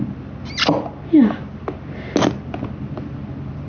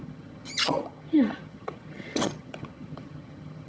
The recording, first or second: first